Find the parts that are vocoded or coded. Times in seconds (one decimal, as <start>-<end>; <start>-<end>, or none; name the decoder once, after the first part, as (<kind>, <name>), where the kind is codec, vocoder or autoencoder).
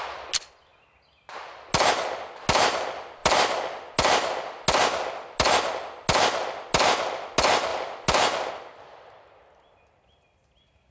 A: none